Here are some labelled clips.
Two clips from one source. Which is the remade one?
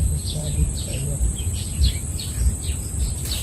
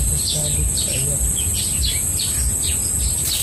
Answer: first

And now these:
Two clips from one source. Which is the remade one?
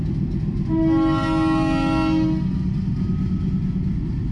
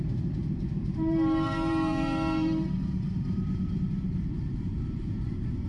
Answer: second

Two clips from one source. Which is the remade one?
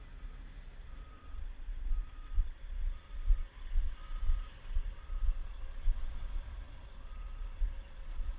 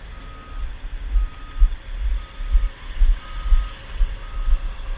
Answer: first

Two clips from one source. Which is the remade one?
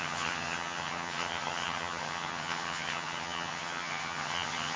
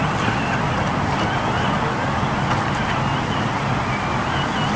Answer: first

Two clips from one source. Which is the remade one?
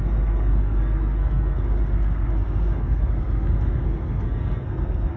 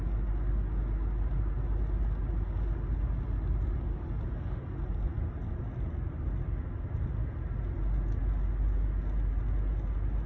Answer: first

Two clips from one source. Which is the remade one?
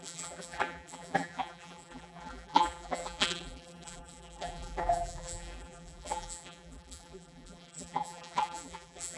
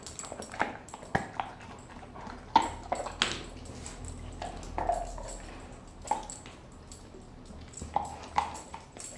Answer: first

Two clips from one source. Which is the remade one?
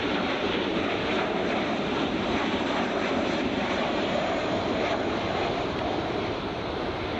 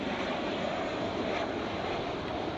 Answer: first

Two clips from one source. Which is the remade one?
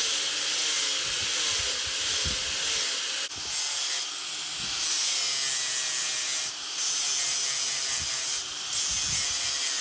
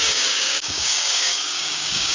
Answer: second